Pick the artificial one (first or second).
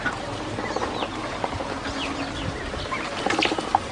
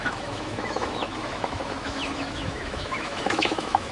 second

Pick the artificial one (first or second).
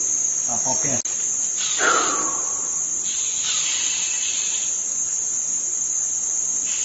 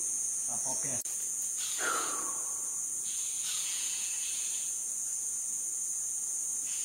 second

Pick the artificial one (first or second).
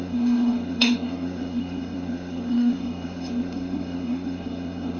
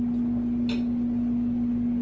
first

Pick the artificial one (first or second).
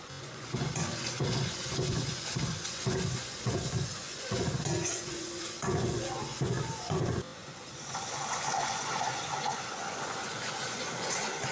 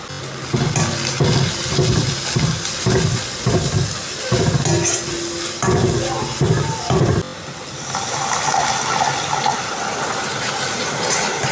first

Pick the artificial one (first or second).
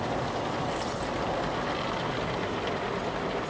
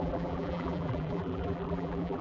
second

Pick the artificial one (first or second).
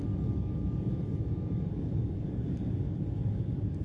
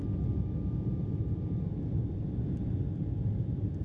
first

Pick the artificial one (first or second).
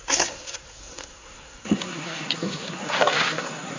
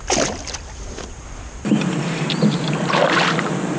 first